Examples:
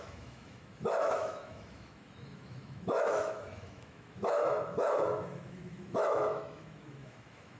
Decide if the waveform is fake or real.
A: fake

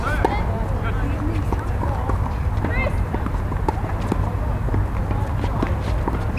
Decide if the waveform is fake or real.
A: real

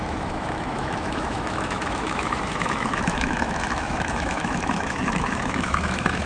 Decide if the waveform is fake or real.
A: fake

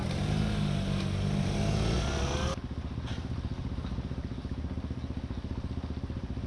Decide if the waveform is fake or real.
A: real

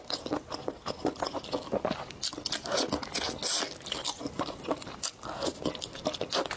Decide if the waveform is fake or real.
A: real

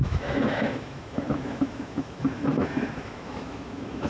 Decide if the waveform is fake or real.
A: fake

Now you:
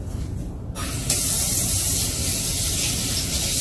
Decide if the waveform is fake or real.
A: real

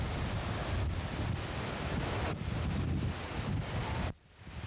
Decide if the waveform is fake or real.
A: real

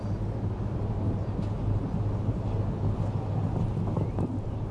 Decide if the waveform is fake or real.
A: real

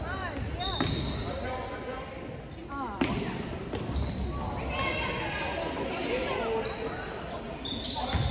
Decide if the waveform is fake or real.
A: real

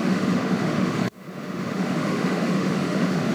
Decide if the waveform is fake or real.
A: fake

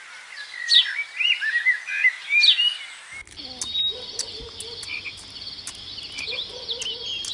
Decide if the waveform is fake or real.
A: real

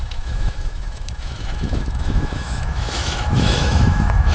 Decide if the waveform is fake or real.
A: fake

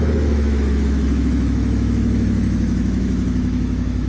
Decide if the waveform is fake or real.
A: fake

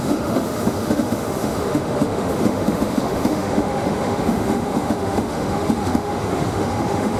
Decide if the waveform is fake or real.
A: fake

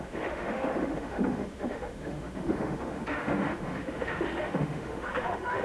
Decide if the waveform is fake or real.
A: fake